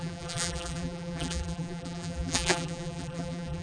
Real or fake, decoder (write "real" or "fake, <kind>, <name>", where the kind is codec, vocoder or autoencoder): fake, vocoder, BigVGAN v2